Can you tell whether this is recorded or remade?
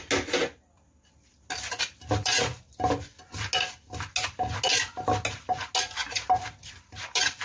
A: recorded